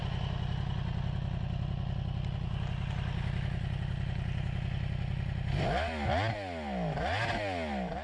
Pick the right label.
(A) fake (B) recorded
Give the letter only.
B